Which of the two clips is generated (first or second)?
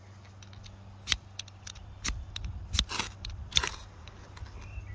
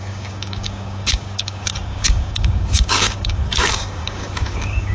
second